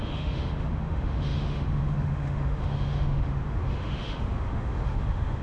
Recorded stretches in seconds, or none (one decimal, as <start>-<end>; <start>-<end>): none